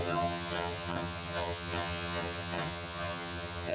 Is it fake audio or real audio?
fake